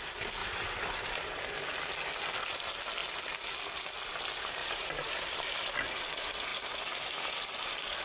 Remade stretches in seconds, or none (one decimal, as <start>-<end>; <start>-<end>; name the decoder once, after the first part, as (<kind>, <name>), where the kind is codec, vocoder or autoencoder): 0.4-1.1 (vocoder, BigVGAN v2); 4.6-5.6